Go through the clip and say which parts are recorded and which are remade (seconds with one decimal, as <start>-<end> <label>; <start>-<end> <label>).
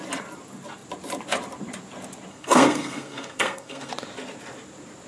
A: 0.0-2.3 recorded; 2.3-3.9 remade; 3.9-5.1 recorded